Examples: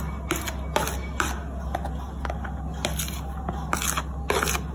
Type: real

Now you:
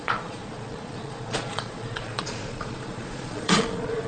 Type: fake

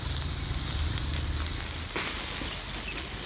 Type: real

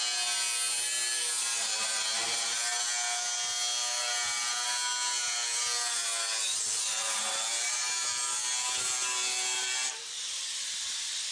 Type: real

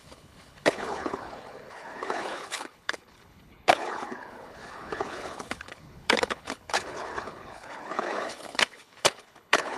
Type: fake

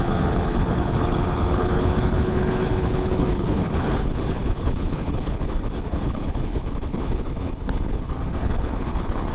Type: fake